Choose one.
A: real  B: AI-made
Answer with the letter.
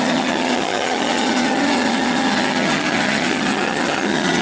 B